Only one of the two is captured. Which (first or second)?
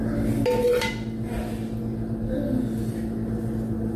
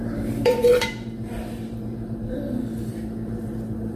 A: first